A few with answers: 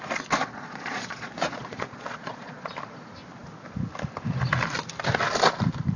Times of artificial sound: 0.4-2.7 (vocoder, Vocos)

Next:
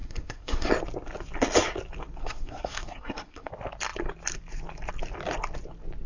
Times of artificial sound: 0.0-0.7 (codec, SNAC); 2.2-3.5

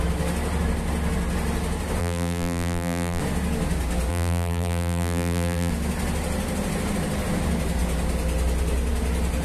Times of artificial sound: 2.0-3.2 (vocoder, BigVGAN v2); 4.1-5.7

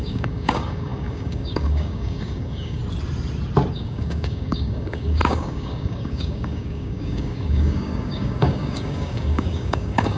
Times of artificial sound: 0.0-2.8 (codec, DAC); 3.7-10.2

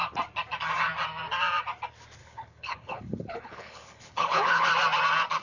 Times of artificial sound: 2.2-4.7 (codec, HILCodec)